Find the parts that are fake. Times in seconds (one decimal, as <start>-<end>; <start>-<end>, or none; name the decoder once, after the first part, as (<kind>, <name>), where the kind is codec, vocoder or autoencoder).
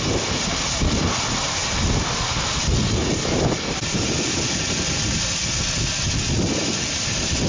none